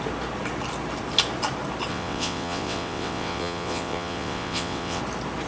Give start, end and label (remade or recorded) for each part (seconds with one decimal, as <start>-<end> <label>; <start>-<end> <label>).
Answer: 0.0-1.9 recorded; 1.9-5.0 remade; 5.0-5.5 recorded